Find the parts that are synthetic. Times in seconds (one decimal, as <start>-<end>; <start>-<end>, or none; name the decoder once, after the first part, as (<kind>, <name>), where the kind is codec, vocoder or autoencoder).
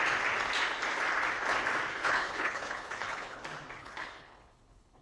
1.9-3.4 (codec, HILCodec); 3.8-5.0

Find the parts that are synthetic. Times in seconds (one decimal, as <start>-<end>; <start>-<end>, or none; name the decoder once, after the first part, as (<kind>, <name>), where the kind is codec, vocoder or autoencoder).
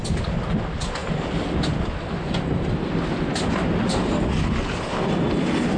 none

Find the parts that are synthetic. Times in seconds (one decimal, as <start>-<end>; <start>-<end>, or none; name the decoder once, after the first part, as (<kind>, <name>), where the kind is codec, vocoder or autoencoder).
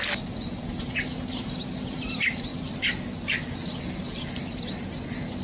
none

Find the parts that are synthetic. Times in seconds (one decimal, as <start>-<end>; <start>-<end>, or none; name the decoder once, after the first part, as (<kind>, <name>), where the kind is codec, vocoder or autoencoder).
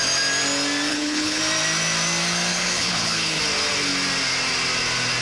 0.9-1.4 (codec, HILCodec); 2.5-3.4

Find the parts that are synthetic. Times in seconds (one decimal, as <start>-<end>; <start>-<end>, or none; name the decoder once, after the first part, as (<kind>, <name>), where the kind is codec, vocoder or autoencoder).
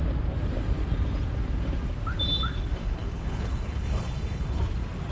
2.8-4.6 (codec, HILCodec)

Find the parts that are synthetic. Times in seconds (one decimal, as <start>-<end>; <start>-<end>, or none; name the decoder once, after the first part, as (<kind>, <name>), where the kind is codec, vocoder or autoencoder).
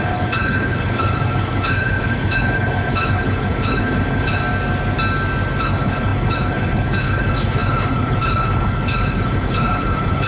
0.0-4.4 (codec, HILCodec); 5.6-10.3